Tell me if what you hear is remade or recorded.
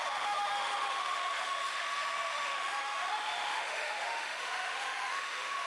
remade